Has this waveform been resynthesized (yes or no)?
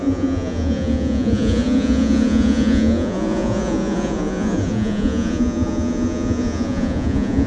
yes